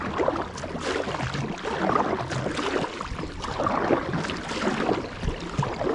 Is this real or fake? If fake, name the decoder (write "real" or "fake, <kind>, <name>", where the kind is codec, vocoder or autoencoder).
real